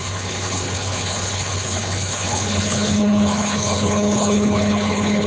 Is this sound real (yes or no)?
no